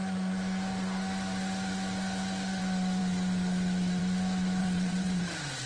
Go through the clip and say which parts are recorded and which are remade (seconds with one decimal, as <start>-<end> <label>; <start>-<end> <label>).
0.0-4.6 recorded; 4.6-5.2 remade; 5.2-5.7 recorded

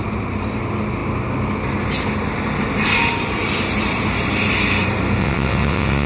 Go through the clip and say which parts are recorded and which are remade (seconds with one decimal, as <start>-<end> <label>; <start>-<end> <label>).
0.0-5.2 recorded; 5.2-6.1 remade